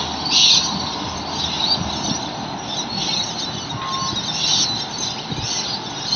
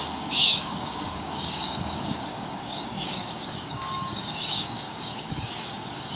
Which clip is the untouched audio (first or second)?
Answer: first